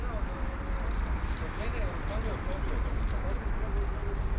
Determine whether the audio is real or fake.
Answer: real